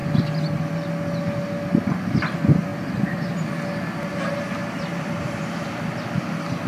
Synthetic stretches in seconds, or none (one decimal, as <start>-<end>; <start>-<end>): 4.6-6.2